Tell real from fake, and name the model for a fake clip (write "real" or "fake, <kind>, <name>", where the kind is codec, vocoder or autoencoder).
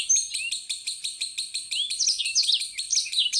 real